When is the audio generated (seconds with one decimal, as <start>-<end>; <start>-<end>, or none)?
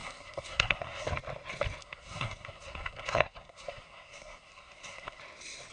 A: 0.0-1.1; 1.8-5.2